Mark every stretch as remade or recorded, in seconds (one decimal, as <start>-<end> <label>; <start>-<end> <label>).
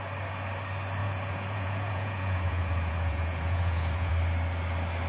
0.0-1.0 recorded; 1.0-4.1 remade; 4.1-5.1 recorded